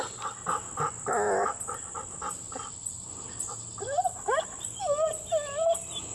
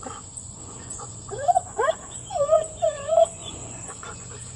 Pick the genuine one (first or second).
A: first